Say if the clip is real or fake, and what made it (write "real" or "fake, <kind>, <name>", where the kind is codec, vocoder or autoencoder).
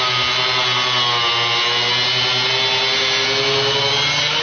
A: real